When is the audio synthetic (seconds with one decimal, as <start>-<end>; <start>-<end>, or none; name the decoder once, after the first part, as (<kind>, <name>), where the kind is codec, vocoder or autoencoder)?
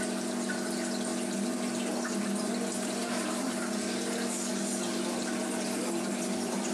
none